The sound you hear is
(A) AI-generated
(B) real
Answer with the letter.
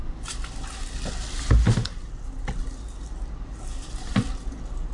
B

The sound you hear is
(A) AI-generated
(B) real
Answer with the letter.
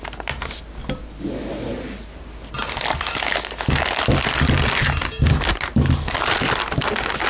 B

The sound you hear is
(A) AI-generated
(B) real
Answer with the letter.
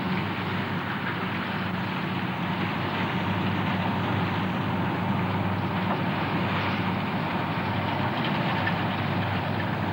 B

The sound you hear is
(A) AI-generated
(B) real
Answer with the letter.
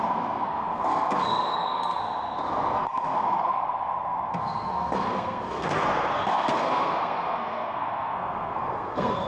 A